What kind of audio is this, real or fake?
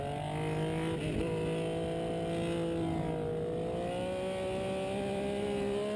real